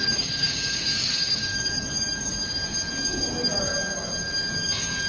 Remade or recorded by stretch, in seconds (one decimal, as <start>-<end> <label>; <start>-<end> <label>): 0.0-2.4 remade; 2.4-2.9 recorded; 2.9-3.7 remade; 3.7-4.5 recorded; 4.5-5.1 remade